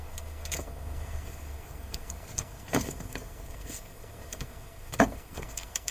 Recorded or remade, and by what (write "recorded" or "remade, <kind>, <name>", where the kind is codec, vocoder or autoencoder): remade, codec, SNAC